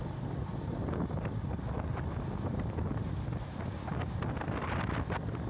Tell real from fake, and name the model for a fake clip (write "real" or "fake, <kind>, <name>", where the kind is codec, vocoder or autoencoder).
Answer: real